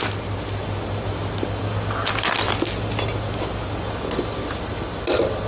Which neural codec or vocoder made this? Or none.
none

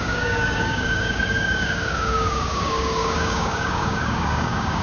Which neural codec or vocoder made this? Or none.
codec, DAC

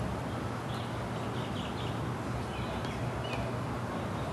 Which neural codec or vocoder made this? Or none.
none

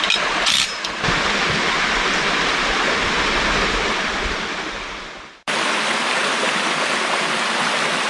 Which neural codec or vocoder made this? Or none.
none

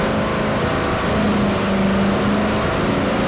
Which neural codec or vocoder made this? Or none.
none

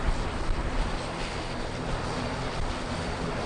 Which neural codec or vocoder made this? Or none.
none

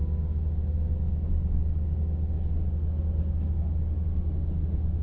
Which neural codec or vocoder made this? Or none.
none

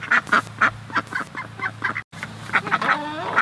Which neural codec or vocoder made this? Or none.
none